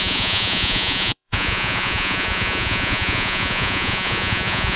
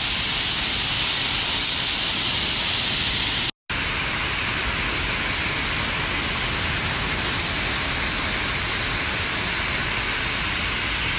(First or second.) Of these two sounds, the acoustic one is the second